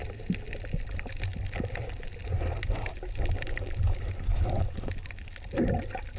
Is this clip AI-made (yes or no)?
yes